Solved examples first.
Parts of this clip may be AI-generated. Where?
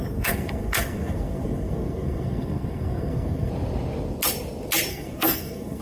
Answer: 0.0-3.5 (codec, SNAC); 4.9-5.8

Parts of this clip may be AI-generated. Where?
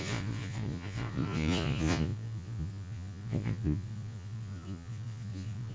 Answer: 0.0-5.7 (vocoder, Vocos)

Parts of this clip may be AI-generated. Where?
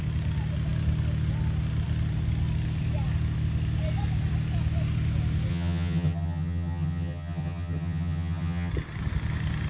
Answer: 5.5-8.7 (vocoder, HiFi-GAN)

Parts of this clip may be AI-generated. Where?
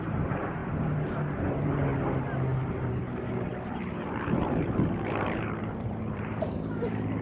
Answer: 0.0-0.6 (vocoder, BigVGAN v2); 1.5-1.9; 2.7-7.2